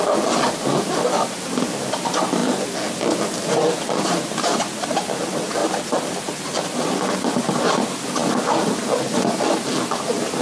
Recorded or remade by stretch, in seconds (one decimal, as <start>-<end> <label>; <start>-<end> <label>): 0.0-10.4 recorded